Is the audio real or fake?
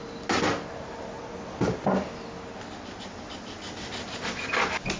real